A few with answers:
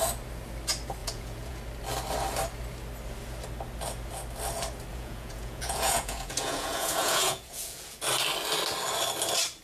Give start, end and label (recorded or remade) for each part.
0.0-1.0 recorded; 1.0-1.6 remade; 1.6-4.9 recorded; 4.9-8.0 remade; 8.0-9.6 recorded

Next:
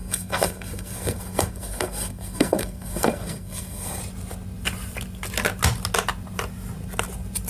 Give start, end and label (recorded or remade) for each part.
0.0-4.0 remade; 4.0-7.5 recorded

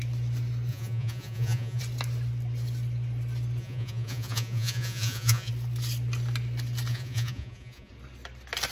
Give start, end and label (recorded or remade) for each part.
0.0-0.7 recorded; 0.7-1.8 remade; 1.8-3.6 recorded; 3.6-5.5 remade; 5.5-6.9 recorded; 6.9-7.9 remade; 7.9-8.7 recorded

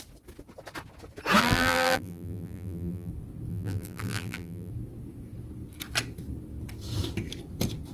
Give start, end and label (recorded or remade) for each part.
0.0-1.4 recorded; 1.4-3.1 remade; 3.1-3.5 recorded; 3.5-4.7 remade; 4.7-7.9 recorded

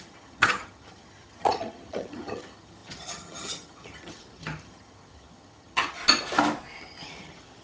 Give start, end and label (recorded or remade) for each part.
0.0-6.0 remade; 6.0-6.8 recorded; 6.8-7.6 remade